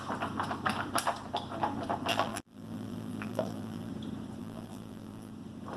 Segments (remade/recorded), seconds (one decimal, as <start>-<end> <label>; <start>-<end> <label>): 0.0-2.1 recorded; 2.1-3.9 remade; 3.9-4.4 recorded; 4.4-5.3 remade; 5.3-5.8 recorded